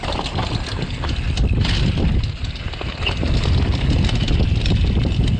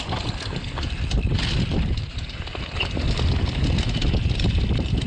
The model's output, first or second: second